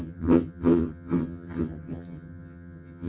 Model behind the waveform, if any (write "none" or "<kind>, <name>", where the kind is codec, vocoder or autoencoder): vocoder, HiFi-GAN